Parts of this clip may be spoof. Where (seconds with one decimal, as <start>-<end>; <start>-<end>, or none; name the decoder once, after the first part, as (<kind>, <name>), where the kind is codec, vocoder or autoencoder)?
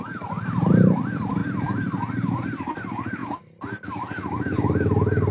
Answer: none